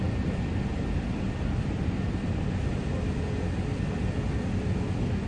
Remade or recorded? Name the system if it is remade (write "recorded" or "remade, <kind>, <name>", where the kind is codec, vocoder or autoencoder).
recorded